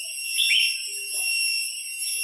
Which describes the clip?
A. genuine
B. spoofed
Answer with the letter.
A